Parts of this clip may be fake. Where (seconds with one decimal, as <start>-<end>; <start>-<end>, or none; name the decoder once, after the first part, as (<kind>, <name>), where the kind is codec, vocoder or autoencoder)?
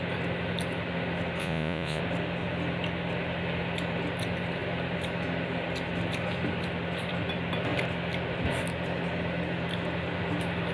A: 1.4-2.0 (vocoder, Vocos)